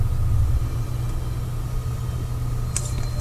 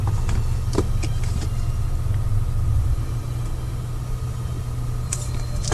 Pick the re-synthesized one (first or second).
second